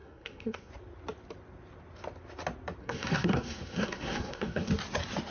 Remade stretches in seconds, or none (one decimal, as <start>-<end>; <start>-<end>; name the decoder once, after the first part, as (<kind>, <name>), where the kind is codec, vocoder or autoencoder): 0.0-0.7 (codec, SNAC); 2.8-4.7

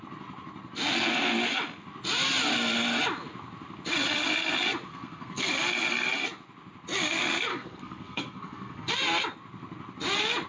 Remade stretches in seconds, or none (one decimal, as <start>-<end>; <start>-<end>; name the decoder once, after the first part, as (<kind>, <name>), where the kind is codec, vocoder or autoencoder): 4.9-5.5 (codec, SNAC); 7.5-8.9

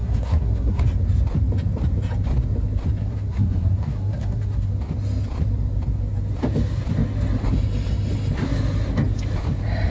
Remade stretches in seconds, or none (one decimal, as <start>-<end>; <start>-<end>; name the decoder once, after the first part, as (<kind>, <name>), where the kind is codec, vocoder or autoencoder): 0.0-0.8 (codec, SNAC); 3.0-4.7

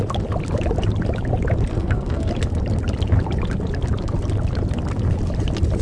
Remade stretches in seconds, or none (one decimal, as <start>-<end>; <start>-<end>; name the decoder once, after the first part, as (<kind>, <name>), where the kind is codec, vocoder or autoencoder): 1.7-2.3 (codec, SNAC)

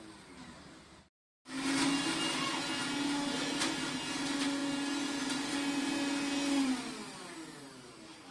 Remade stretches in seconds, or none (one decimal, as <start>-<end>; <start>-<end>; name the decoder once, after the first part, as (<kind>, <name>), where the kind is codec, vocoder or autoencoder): none

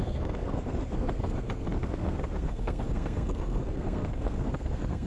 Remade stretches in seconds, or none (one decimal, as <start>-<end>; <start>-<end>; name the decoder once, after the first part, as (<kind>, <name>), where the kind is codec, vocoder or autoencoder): 0.0-5.1 (codec, SNAC)

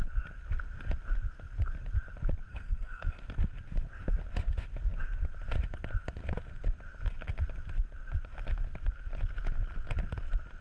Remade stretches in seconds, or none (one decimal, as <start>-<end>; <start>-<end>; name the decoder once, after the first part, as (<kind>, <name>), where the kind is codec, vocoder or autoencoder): 2.5-3.2 (codec, SNAC)

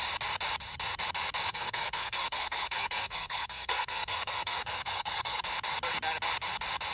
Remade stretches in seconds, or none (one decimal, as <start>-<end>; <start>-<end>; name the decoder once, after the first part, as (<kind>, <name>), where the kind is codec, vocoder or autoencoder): 1.5-5.4 (codec, SNAC)